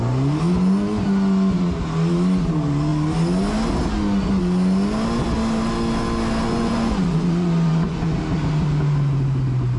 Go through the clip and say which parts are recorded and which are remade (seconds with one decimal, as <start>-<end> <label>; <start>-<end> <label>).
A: 0.0-6.5 recorded; 6.5-8.2 remade; 8.2-9.8 recorded